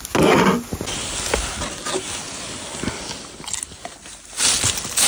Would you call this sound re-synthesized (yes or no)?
no